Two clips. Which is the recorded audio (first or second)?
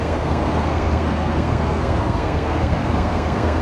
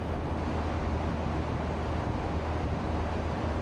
second